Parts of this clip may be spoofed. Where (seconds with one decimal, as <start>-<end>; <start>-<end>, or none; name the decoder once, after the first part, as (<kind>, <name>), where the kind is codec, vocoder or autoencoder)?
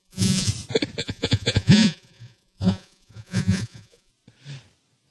0.0-0.5 (vocoder, Vocos); 1.0-4.1